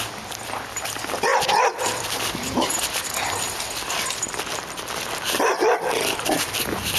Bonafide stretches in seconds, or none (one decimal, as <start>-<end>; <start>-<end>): none